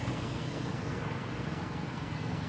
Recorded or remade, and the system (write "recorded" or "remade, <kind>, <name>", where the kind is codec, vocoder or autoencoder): remade, codec, SNAC